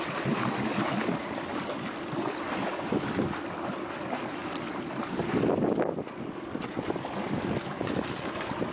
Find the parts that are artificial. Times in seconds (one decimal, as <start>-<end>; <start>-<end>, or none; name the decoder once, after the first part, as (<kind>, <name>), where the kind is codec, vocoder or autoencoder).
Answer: none